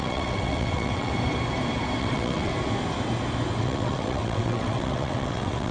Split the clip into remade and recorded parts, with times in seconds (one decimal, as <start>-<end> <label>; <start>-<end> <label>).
0.0-1.1 remade; 1.1-2.0 recorded; 2.0-2.5 remade; 2.5-3.6 recorded; 3.6-5.7 remade